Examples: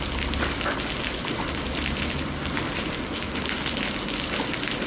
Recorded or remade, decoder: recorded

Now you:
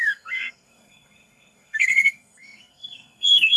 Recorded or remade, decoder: remade, codec, SNAC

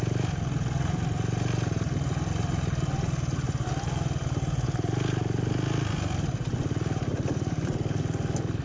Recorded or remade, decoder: recorded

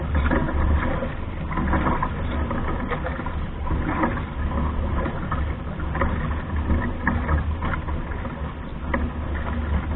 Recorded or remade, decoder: recorded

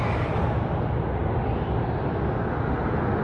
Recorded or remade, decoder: recorded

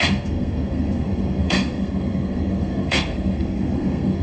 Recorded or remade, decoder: remade, codec, SNAC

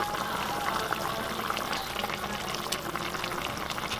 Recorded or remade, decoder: recorded